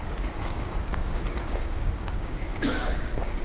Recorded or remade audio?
remade